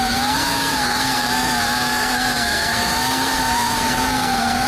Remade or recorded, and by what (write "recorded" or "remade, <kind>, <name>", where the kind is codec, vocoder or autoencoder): remade, codec, SNAC